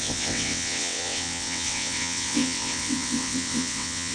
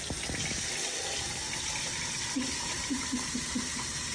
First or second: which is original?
second